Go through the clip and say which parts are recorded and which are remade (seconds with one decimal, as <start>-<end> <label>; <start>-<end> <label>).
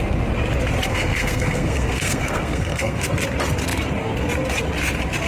0.0-0.9 recorded; 0.9-3.0 remade; 3.0-5.3 recorded